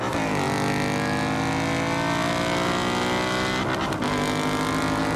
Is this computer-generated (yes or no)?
no